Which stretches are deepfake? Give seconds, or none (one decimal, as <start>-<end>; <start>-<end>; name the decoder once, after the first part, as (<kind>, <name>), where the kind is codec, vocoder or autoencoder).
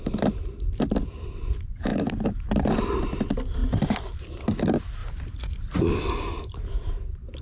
none